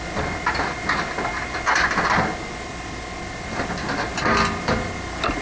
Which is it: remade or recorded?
recorded